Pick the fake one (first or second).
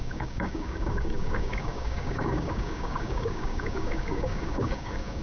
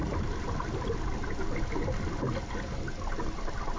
first